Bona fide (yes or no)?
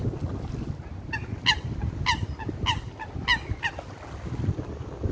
yes